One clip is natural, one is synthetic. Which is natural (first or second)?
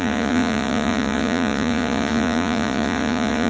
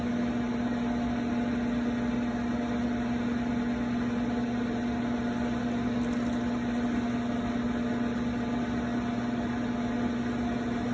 second